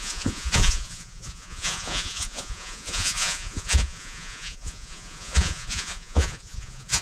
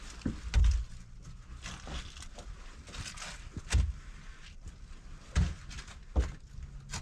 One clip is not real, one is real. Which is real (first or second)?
second